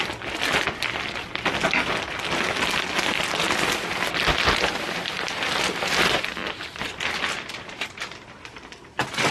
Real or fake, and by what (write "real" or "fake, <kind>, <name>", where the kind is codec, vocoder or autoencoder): fake, vocoder, BigVGAN v2